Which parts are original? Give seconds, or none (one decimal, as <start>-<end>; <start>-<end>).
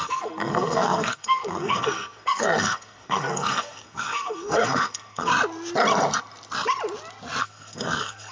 5.3-7.4